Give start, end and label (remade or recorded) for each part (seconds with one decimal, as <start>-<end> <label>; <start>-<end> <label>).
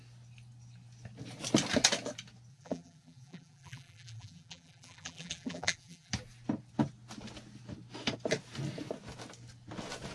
0.0-2.5 recorded; 2.5-6.1 remade; 6.1-10.1 recorded